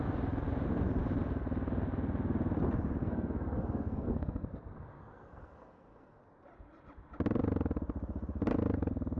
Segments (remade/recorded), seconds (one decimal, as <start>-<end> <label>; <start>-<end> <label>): 0.0-3.0 recorded; 3.0-6.2 remade; 6.2-9.2 recorded

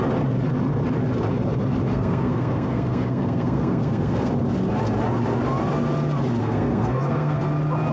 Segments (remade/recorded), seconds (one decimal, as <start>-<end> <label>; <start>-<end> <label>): 0.0-1.9 recorded; 1.9-4.3 remade; 4.3-6.4 recorded; 6.4-7.4 remade; 7.4-7.9 recorded

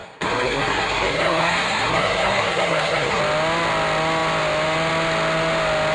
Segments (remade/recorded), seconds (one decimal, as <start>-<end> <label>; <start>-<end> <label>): 0.0-3.2 remade; 3.2-5.9 recorded